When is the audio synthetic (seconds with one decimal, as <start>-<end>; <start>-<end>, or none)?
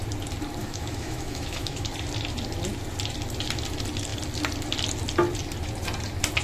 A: 0.6-1.9